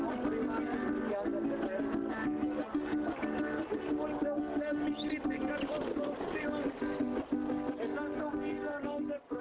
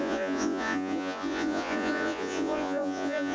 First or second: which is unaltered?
first